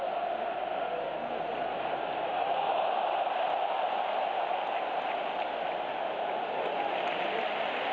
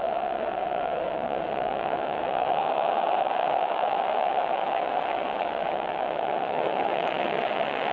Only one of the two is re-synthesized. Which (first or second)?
second